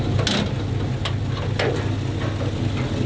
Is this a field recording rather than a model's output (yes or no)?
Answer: yes